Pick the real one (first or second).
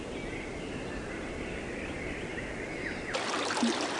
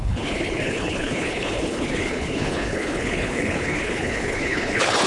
first